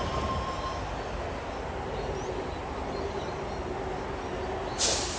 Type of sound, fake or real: real